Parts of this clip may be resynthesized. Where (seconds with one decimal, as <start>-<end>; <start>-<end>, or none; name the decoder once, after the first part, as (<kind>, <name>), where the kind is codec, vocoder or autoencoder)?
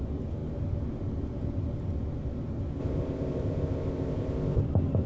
2.8-4.6 (codec, ZipCodec)